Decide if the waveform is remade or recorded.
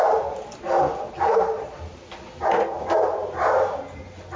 recorded